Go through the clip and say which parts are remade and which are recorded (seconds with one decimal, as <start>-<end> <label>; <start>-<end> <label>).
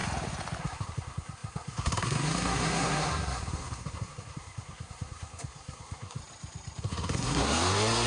0.0-0.6 recorded; 0.6-6.2 remade; 6.2-6.8 recorded; 6.8-8.1 remade